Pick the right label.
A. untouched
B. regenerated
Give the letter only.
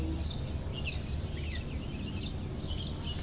A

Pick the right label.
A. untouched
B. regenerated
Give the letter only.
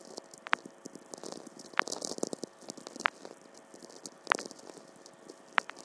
A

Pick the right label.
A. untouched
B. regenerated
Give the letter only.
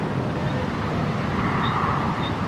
B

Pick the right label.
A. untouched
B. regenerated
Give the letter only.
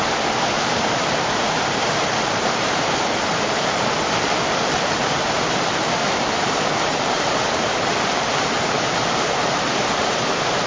B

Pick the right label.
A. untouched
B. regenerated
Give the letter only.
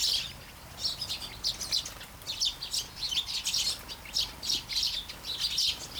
A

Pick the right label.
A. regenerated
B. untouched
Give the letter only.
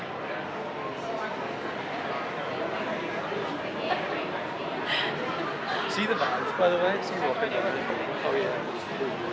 B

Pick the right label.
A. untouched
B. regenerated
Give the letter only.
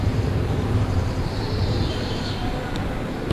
B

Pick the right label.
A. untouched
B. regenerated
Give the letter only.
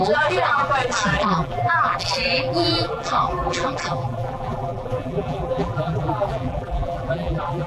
B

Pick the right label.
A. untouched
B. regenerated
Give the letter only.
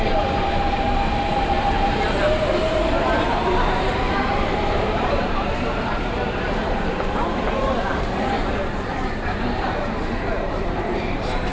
B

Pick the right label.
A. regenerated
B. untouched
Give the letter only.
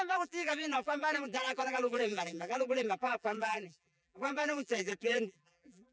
A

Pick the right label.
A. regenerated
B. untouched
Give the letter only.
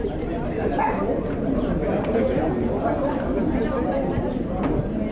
A